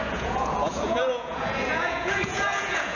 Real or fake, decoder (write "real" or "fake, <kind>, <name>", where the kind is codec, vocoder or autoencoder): fake, vocoder, Vocos